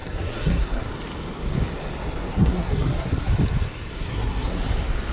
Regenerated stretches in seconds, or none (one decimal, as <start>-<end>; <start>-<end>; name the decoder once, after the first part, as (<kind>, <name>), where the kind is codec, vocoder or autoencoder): 0.0-0.9 (codec, SNAC); 2.2-3.3; 3.9-4.6